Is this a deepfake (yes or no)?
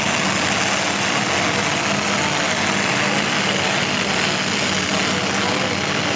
no